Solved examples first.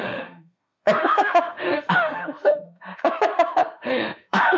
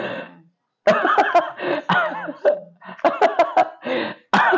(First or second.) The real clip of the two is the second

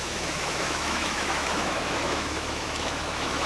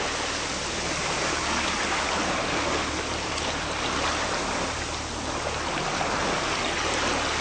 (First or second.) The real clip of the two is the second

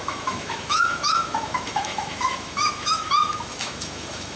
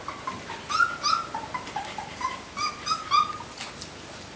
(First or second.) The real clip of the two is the second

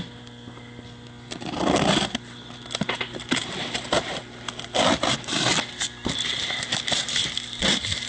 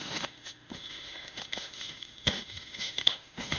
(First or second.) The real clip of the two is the first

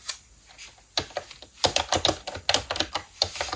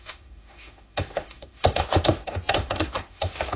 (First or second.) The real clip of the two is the first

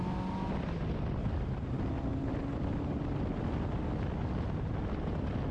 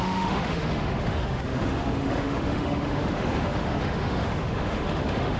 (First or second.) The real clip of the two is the first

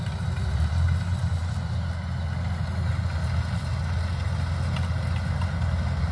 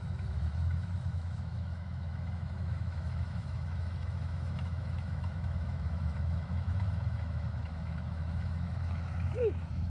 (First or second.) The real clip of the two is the first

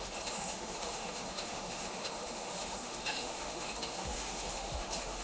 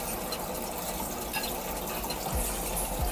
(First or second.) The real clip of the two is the second